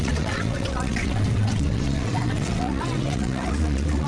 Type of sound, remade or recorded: remade